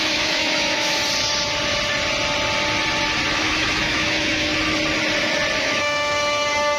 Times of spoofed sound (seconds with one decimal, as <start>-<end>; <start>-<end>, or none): 0.0-1.0; 3.3-4.5; 5.6-6.8